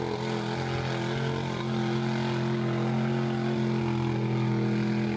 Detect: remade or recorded recorded